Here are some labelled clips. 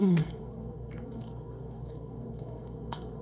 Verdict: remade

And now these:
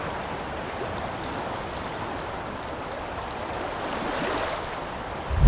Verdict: recorded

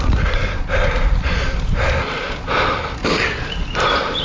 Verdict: recorded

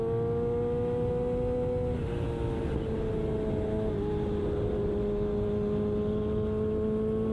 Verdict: recorded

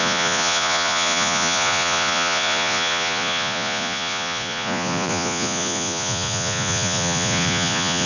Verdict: remade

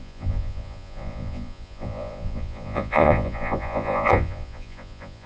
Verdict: remade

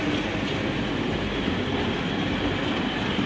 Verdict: recorded